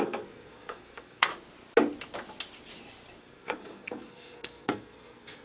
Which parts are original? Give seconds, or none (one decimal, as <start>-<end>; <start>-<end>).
1.3-3.2